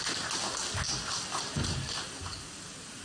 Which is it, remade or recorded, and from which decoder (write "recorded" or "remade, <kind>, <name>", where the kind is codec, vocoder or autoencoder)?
recorded